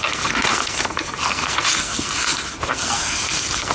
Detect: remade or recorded remade